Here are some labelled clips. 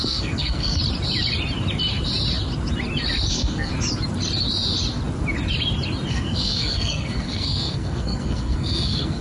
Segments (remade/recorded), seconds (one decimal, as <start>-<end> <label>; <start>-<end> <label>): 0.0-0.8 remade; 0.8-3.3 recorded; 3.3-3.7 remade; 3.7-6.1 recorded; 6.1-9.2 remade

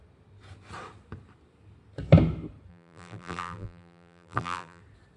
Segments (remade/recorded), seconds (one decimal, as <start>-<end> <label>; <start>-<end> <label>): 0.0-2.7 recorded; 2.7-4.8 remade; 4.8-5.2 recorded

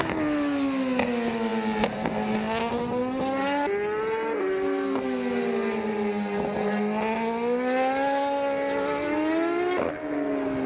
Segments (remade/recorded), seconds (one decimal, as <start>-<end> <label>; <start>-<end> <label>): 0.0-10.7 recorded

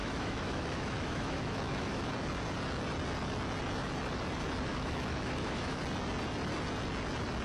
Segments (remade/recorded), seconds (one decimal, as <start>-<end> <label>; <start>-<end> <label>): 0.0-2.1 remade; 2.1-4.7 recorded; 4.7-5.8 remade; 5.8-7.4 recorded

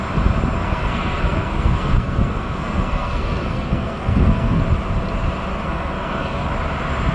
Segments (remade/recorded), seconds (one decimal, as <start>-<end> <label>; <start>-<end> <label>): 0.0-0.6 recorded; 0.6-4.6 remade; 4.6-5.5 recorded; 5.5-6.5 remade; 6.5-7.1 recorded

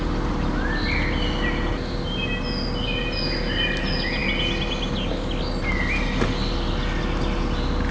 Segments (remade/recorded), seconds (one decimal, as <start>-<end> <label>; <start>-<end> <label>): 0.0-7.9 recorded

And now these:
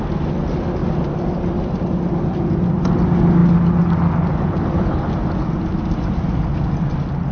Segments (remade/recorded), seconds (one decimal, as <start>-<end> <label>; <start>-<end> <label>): 0.0-7.3 recorded

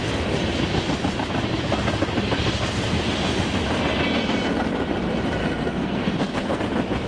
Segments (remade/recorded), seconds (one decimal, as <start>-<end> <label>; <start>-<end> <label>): 0.0-5.4 recorded; 5.4-6.6 remade; 6.6-7.1 recorded